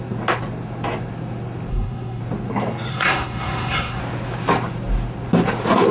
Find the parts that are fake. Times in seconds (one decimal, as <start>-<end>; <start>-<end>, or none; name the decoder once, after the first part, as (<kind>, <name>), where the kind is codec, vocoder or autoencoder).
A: 1.7-2.2 (codec, SNAC); 2.9-4.0